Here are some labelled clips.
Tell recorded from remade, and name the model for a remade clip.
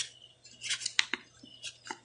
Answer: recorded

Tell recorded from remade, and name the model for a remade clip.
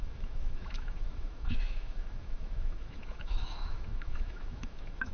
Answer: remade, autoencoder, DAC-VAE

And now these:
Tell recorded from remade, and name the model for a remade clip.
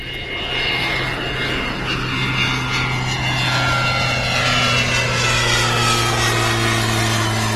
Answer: recorded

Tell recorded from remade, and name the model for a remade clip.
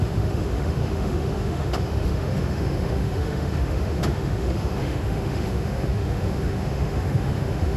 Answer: remade, autoencoder, DAC-VAE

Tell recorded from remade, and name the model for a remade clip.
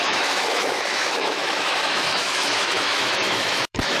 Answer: remade, autoencoder, DAC-VAE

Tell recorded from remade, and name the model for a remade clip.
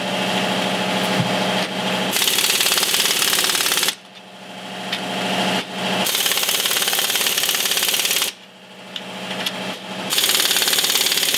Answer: recorded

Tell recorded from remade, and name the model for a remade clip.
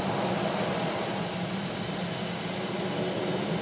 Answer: recorded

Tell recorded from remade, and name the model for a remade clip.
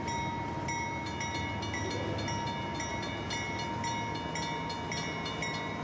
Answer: recorded